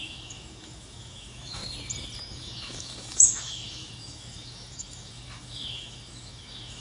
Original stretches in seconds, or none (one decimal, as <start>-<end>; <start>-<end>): 1.6-2.2